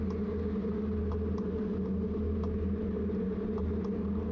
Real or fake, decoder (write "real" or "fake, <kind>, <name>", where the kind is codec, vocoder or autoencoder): real